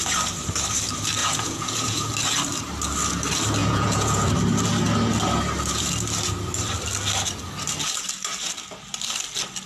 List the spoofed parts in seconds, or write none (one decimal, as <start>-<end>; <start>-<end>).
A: 1.2-2.1; 3.6-4.3